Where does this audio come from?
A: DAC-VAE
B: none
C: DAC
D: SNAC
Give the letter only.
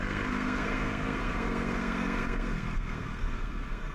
D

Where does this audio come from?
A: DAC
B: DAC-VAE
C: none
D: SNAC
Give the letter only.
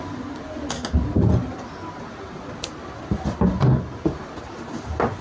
C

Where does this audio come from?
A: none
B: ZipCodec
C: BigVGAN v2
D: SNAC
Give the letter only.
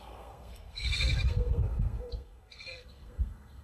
D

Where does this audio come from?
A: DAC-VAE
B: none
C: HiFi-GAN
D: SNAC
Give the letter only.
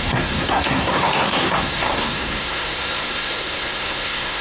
D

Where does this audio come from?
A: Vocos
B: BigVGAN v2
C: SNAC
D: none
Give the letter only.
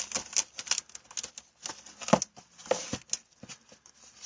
D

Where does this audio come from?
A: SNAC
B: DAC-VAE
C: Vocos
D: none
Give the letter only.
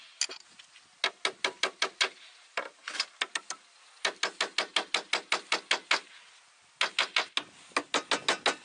D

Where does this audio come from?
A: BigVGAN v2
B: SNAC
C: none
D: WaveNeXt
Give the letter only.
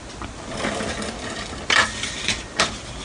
C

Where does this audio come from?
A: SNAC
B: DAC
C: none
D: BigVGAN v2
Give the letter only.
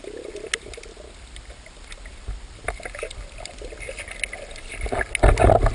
C